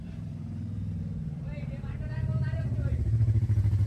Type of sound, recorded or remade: remade